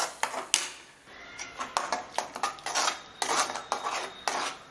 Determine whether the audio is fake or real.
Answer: real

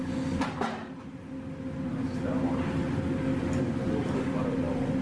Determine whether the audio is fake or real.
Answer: real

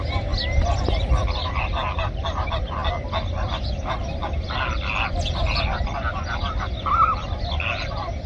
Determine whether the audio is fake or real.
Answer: real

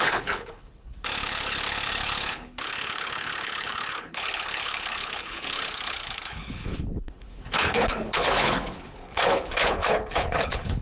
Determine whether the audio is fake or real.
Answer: fake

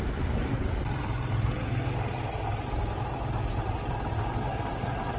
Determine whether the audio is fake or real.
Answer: real